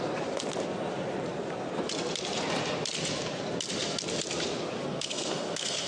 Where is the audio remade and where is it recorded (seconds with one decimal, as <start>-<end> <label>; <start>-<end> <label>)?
0.0-4.9 recorded; 4.9-5.9 remade